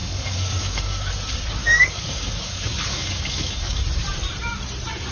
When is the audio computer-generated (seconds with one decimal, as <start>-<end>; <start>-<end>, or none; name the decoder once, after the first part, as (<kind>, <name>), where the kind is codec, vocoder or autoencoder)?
0.0-1.1 (codec, DAC); 1.6-3.8